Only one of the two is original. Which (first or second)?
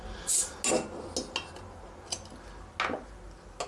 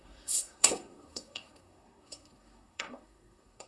first